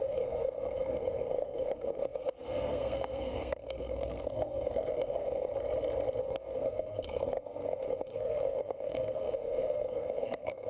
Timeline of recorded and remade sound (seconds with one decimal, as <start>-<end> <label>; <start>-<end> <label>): 0.0-5.5 remade; 5.5-6.2 recorded; 6.2-10.7 remade